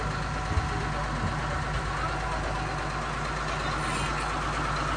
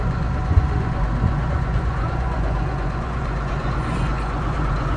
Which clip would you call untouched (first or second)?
first